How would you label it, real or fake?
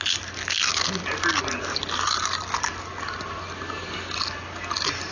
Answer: real